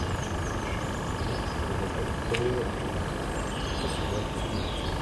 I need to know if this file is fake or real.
real